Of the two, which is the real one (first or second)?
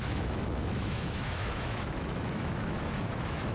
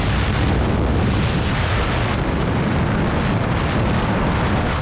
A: second